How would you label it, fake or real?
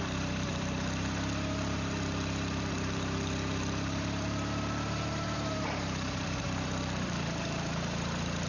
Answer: fake